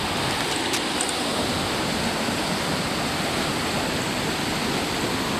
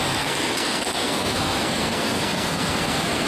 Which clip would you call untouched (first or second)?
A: first